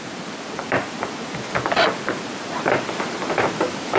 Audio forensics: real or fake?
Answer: real